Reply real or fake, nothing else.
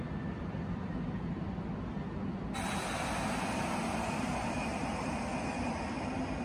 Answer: real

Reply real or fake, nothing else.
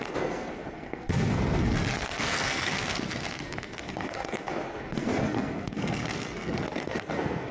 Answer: fake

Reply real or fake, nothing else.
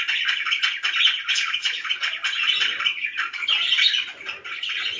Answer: real